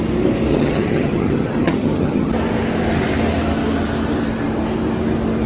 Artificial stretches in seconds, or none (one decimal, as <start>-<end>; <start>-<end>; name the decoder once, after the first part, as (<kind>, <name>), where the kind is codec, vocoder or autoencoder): 0.5-2.3 (vocoder, HiFi-GAN)

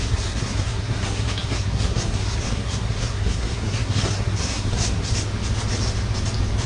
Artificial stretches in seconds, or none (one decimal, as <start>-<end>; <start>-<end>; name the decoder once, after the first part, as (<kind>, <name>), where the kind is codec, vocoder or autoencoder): 0.0-5.1 (codec, SNAC)

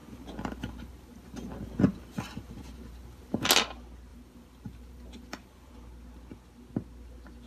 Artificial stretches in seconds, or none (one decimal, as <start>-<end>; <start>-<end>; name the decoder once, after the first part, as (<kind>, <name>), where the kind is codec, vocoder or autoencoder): 0.0-3.5 (vocoder, BigVGAN v2); 4.1-5.7

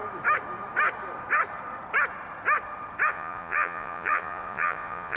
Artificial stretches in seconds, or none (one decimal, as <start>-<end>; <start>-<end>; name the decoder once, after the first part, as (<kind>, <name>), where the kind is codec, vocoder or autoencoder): 3.1-5.2 (vocoder, Vocos)

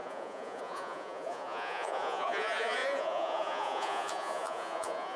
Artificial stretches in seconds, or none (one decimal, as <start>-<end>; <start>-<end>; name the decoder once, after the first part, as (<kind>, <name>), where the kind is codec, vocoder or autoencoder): 0.0-5.2 (vocoder, Vocos)

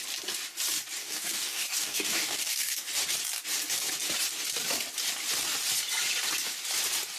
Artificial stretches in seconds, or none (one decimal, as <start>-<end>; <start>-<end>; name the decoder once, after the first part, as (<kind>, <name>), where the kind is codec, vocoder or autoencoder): 1.0-2.9 (codec, DAC)

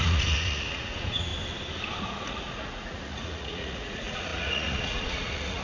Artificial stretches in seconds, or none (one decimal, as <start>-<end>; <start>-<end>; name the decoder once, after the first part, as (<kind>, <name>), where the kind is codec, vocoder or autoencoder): 0.0-1.3 (vocoder, Vocos); 2.0-5.6

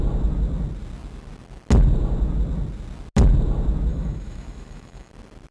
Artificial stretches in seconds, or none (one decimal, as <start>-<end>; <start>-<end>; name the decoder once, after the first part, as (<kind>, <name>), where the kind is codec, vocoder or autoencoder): 3.9-5.1 (autoencoder, DAC-VAE)